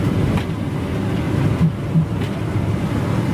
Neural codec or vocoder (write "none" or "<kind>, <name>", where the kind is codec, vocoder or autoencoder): none